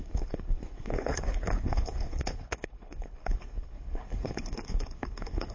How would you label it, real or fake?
fake